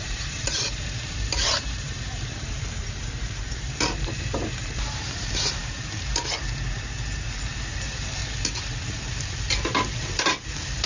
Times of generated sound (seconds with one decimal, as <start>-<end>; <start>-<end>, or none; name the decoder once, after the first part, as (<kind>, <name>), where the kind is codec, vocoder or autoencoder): 0.0-8.2 (vocoder, BigVGAN v2); 9.8-10.9